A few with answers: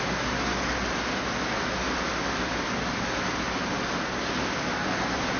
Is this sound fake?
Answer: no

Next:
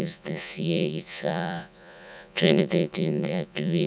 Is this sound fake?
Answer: yes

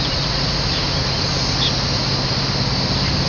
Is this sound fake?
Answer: no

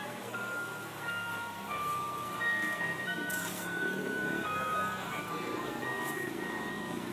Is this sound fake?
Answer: yes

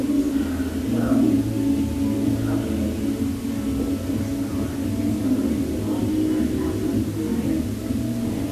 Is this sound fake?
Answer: no